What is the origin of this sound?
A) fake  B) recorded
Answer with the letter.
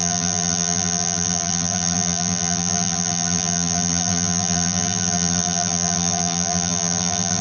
A